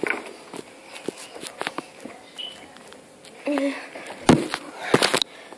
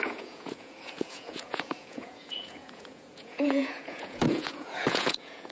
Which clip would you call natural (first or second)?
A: first